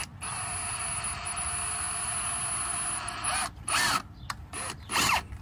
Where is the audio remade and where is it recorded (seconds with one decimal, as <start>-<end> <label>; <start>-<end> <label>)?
0.0-5.4 recorded